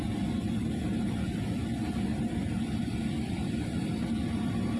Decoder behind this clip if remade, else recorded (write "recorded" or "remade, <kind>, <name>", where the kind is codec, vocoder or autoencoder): recorded